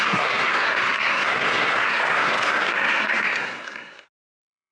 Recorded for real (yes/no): no